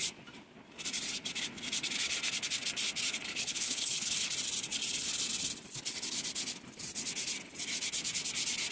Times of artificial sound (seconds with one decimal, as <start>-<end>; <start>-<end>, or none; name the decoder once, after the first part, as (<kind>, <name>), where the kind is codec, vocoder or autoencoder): 3.3-4.2 (codec, HILCodec)